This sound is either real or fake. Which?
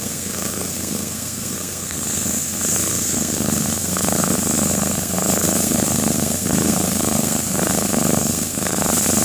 fake